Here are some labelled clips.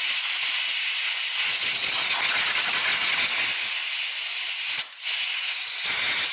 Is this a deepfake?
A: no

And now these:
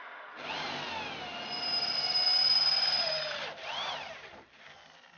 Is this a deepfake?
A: no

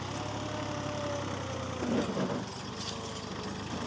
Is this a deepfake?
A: no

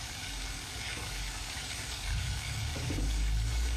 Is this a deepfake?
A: yes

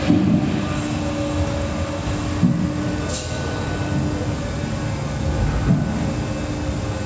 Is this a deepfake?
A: no